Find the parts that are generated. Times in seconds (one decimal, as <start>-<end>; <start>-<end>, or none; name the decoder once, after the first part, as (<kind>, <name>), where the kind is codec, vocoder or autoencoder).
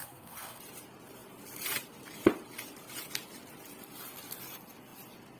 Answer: 0.0-0.6 (codec, SNAC)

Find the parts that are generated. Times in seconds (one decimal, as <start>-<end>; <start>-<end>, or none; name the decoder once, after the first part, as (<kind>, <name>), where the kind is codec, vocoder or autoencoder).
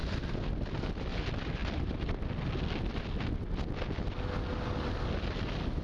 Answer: none